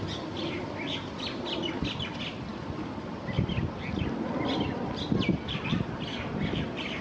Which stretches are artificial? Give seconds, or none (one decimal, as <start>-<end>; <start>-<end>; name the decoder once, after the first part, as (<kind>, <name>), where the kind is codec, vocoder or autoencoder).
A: none